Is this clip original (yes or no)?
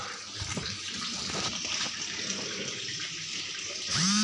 no